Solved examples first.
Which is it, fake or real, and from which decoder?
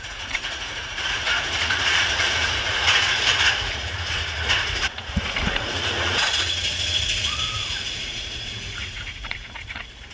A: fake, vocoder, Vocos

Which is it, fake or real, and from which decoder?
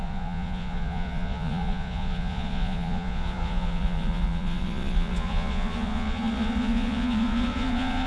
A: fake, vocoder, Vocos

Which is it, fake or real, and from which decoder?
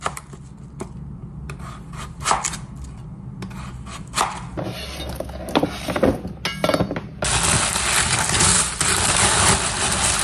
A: real